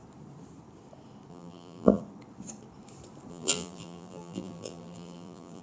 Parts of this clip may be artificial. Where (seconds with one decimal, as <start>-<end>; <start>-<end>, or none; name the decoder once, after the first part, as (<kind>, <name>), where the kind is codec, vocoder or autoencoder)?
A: 1.3-2.0 (vocoder, BigVGAN v2); 3.3-5.6